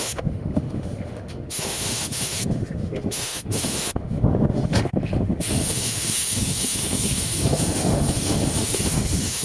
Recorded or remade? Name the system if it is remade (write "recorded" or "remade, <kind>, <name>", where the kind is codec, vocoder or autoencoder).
remade, autoencoder, DAC-VAE